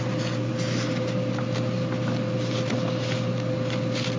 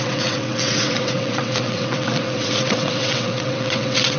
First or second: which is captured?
first